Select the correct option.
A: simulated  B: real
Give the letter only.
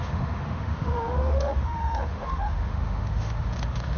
A